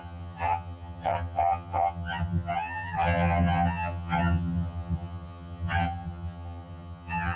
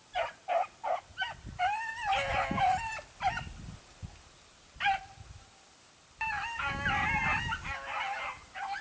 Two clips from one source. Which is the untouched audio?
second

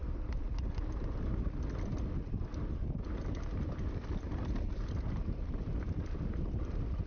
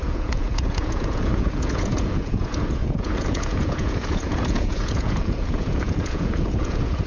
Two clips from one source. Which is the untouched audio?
first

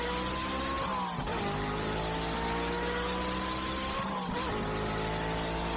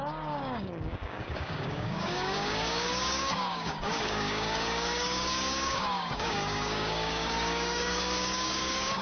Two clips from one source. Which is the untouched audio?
first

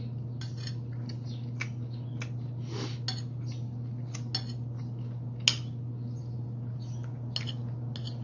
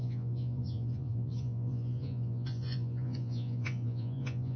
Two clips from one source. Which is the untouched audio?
first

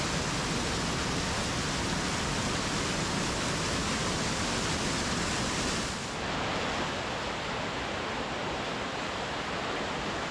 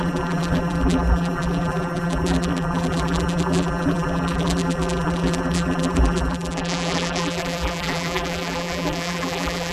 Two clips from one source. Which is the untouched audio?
first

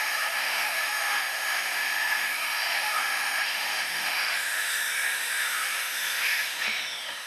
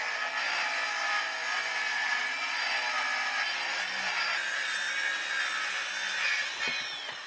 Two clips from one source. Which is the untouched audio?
second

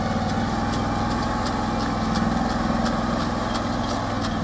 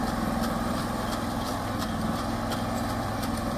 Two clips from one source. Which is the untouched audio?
first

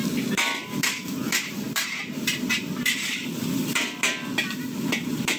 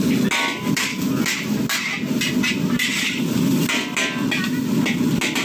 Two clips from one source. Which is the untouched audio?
second